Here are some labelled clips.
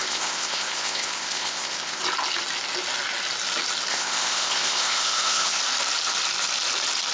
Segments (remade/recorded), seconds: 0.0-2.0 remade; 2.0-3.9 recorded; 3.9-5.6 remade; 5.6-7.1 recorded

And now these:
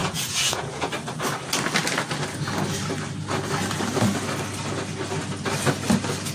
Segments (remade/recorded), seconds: 0.0-0.9 remade; 0.9-6.3 recorded